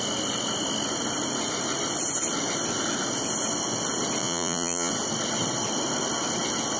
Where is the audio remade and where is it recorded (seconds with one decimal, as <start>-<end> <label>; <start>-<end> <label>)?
0.0-4.2 recorded; 4.2-4.9 remade; 4.9-6.8 recorded